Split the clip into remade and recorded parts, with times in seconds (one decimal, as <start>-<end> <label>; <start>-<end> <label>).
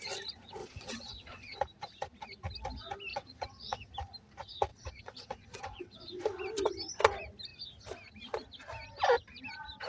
0.0-0.6 recorded; 0.6-1.6 remade; 1.6-3.1 recorded; 3.1-3.9 remade; 3.9-4.7 recorded; 4.7-6.2 remade; 6.2-9.9 recorded